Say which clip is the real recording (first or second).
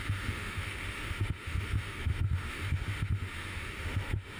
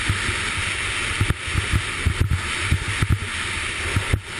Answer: second